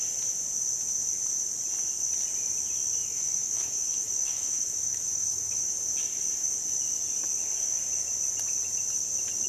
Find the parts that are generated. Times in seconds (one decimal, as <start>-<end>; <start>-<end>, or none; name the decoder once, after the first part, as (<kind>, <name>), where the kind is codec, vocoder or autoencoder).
3.0-5.7 (autoencoder, DAC-VAE)